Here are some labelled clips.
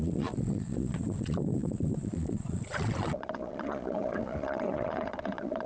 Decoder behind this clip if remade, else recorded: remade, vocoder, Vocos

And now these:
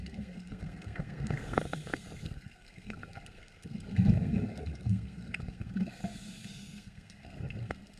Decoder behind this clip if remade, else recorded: remade, codec, SNAC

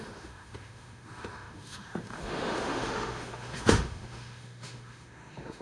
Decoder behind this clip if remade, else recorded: remade, autoencoder, DAC-VAE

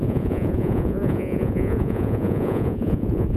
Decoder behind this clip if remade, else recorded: remade, vocoder, Vocos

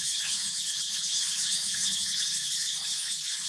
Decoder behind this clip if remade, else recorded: remade, codec, HILCodec